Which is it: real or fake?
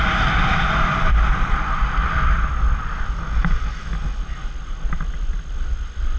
real